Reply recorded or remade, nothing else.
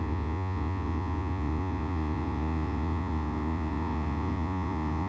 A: remade